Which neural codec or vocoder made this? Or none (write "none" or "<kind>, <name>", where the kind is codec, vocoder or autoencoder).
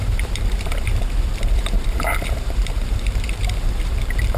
vocoder, BigVGAN v2